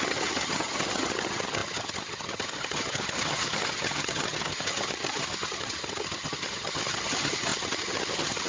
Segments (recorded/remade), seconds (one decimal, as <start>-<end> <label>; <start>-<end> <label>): 0.0-8.5 remade

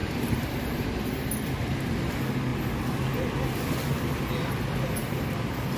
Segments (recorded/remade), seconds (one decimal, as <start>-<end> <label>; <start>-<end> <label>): 0.0-1.0 remade; 1.0-5.0 recorded; 5.0-5.8 remade